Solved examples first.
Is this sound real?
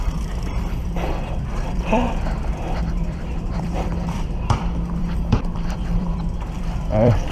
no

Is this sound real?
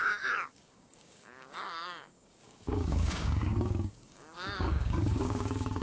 no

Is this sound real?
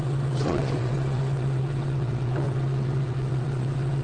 no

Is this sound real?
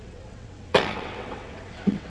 no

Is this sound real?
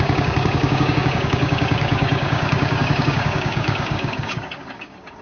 no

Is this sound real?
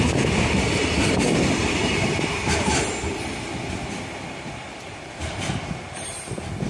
no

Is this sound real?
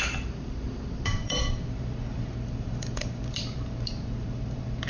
no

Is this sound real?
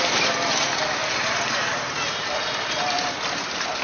yes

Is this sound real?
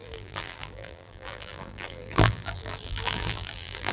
no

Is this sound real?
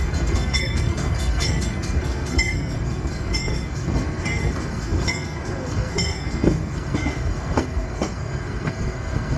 no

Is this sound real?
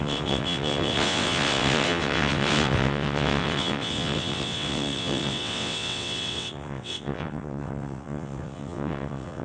no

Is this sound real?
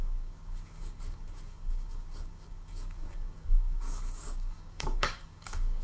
no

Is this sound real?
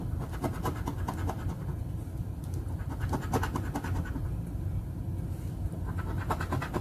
yes